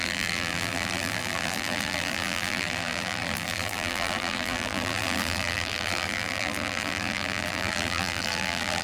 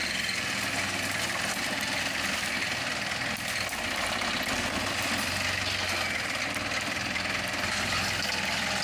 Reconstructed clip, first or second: first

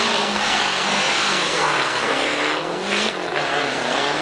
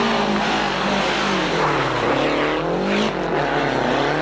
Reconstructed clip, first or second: first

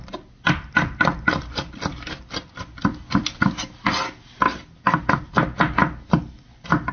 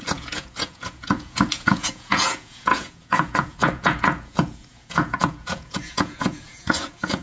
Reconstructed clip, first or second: second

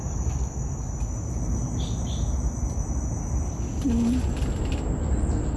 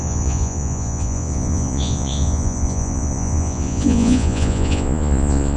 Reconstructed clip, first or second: second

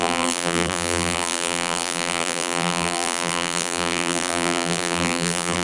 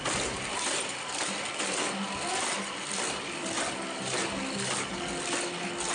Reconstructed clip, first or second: first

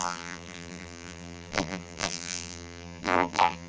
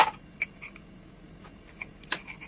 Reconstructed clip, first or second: first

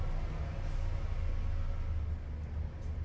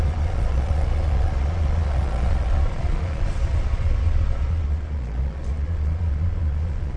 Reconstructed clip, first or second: second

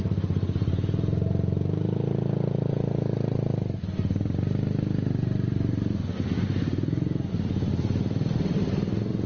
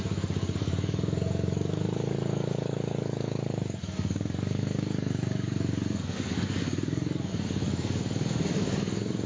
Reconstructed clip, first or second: second